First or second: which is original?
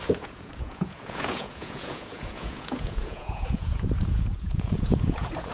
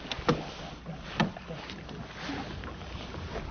second